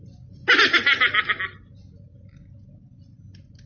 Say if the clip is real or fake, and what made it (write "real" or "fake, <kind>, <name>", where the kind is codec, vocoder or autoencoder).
real